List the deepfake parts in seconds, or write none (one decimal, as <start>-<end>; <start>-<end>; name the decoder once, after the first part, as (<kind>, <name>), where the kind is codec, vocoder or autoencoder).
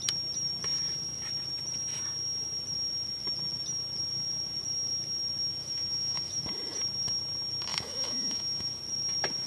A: 5.5-6.4 (autoencoder, DAC-VAE); 7.7-8.8